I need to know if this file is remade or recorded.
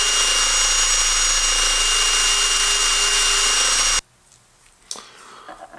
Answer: recorded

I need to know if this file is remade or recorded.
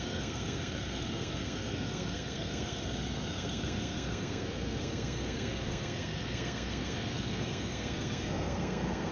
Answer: remade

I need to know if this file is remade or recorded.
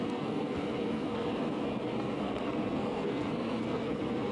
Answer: remade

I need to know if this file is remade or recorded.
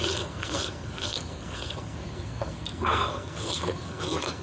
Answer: remade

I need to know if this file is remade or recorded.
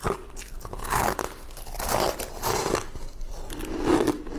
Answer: recorded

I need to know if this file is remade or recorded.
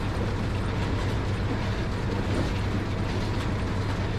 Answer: recorded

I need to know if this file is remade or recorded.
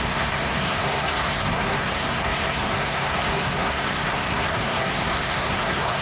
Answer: remade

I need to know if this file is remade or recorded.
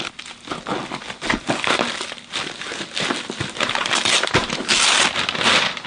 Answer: recorded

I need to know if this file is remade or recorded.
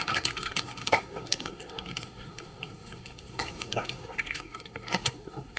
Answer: remade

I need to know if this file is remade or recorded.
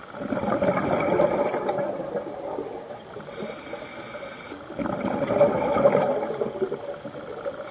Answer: recorded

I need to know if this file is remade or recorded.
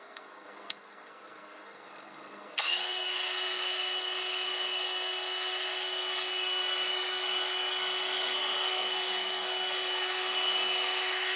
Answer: remade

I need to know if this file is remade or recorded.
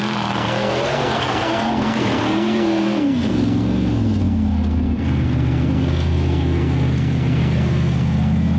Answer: remade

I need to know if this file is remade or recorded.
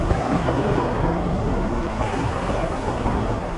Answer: remade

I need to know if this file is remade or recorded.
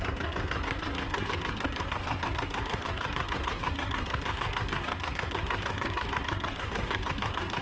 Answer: remade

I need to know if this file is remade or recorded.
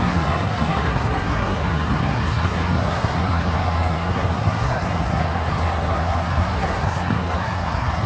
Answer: remade